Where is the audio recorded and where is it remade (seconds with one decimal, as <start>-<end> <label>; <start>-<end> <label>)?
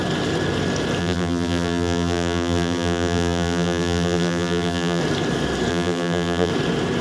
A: 0.0-1.0 recorded; 1.0-5.0 remade; 5.0-5.7 recorded; 5.7-6.5 remade; 6.5-7.0 recorded